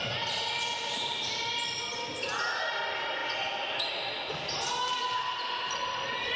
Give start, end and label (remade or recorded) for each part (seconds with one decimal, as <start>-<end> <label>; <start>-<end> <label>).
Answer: 0.0-6.4 recorded